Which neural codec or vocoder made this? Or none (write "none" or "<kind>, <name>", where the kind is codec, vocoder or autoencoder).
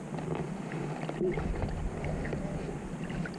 none